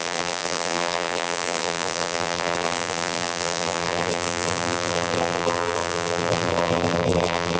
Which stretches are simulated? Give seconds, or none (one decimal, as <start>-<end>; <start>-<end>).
0.0-7.6